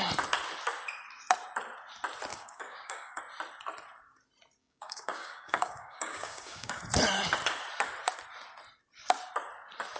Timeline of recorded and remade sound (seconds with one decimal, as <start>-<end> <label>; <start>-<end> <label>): 0.0-2.3 recorded; 2.3-3.2 remade; 3.2-4.6 recorded; 4.6-6.8 remade; 6.8-10.0 recorded